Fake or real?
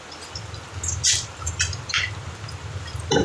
fake